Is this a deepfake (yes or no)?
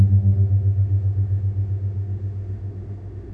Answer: yes